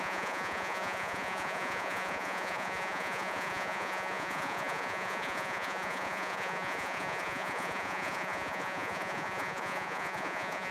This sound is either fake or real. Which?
fake